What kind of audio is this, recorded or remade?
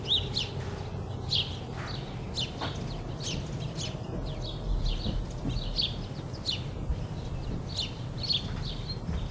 recorded